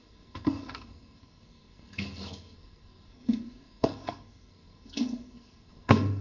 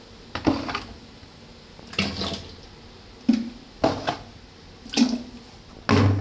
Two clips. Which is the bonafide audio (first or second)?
second